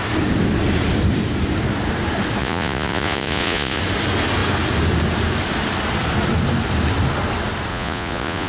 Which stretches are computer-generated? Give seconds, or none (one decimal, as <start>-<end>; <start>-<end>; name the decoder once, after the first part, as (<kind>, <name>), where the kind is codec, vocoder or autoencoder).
2.4-3.8 (vocoder, Vocos); 7.7-8.5

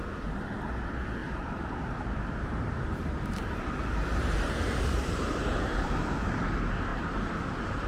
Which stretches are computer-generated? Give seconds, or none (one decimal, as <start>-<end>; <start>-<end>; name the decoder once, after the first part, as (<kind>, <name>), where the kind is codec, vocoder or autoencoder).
1.2-5.9 (vocoder, BigVGAN v2); 6.9-7.9

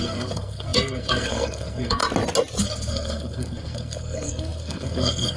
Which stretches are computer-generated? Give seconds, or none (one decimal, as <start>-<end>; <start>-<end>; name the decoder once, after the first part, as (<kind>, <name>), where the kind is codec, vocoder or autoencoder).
0.0-2.0 (codec, SNAC); 2.6-5.4

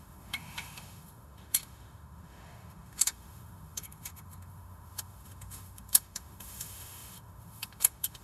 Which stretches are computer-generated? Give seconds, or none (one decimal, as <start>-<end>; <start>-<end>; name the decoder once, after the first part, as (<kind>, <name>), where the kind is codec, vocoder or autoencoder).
0.0-8.2 (autoencoder, DAC-VAE)

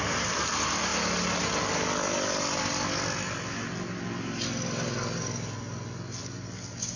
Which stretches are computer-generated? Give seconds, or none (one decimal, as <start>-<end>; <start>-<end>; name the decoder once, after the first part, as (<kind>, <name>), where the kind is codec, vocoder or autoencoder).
none

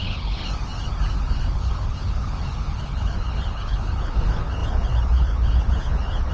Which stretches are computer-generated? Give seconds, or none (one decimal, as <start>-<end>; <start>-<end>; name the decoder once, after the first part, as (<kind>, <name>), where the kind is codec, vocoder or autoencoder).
0.0-0.4 (codec, HILCodec); 1.1-6.3

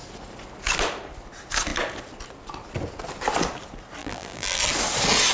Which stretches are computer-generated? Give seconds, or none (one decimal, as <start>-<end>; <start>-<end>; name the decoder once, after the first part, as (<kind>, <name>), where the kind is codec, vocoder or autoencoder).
4.0-4.6 (vocoder, BigVGAN v2)